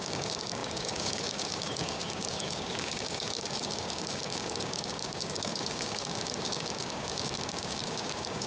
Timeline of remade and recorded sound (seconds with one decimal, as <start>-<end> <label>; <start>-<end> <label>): 0.0-8.5 remade